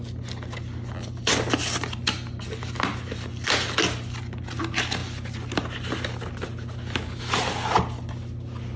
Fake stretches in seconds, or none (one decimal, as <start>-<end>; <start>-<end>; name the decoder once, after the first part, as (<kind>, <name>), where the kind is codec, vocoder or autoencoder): none